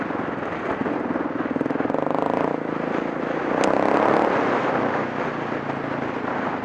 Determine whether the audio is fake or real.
real